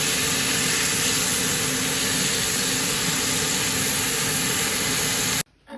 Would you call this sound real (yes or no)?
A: yes